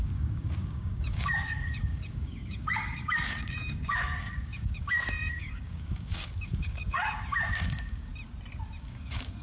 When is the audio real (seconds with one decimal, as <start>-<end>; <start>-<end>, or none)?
8.1-8.8